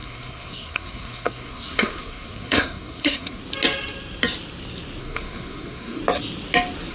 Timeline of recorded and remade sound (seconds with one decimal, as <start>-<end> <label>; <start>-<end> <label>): 0.0-3.4 remade; 3.4-5.0 recorded; 5.0-6.0 remade; 6.0-6.9 recorded